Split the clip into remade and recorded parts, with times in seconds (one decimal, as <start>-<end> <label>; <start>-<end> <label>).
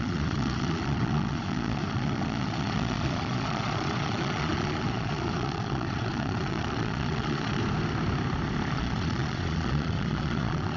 0.0-7.6 remade; 7.6-8.7 recorded; 8.7-10.8 remade